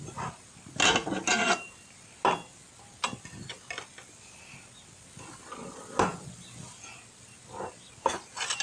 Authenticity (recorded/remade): recorded